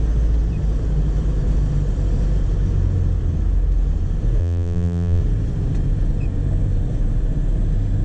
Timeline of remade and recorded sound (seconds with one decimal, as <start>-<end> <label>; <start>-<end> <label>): 0.0-4.4 recorded; 4.4-5.2 remade; 5.2-8.0 recorded